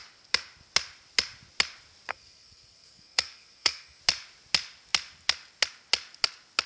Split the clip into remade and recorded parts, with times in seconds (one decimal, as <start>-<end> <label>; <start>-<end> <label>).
0.0-2.1 recorded; 2.1-4.0 remade; 4.0-6.7 recorded